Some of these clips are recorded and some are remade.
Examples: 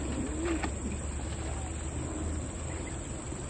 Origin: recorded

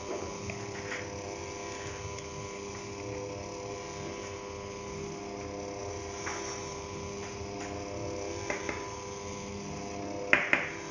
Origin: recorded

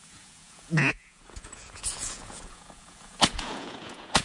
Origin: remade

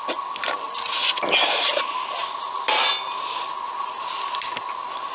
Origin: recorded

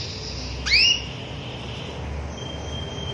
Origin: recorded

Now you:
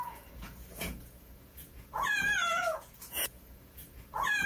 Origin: remade